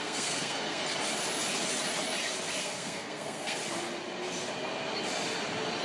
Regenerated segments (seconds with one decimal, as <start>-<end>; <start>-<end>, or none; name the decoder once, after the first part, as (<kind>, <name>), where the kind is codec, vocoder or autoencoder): 0.0-0.8 (codec, SNAC); 2.6-3.6